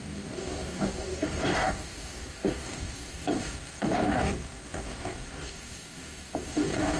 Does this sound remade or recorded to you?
remade